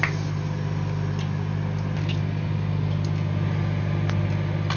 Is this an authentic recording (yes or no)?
yes